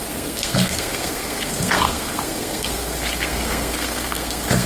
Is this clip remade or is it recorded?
remade